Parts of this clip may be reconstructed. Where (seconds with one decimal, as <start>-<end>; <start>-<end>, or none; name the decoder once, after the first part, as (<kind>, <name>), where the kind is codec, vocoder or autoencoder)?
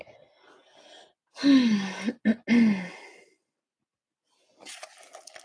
none